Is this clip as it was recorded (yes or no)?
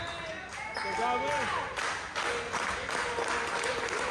yes